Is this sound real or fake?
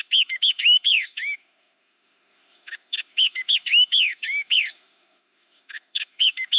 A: fake